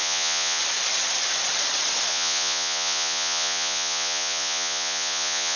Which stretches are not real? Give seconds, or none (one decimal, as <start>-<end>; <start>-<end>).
0.0-0.6; 2.1-5.6